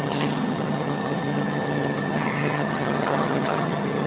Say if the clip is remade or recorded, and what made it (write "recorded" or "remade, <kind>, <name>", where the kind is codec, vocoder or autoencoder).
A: remade, vocoder, HiFi-GAN